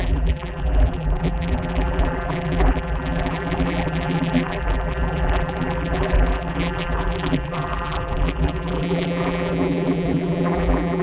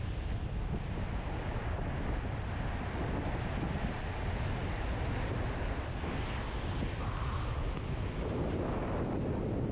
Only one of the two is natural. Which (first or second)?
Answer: second